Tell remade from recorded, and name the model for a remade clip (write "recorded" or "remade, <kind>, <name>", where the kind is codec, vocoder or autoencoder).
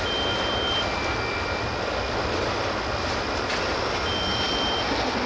recorded